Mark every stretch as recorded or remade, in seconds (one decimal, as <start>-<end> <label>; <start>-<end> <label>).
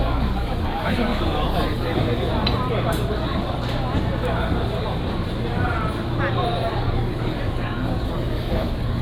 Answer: 0.0-2.3 remade; 2.3-6.7 recorded; 6.7-9.0 remade